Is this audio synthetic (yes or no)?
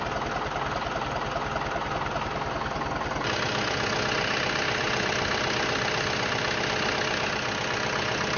no